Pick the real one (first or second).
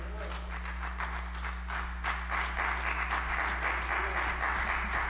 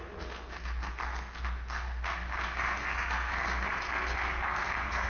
first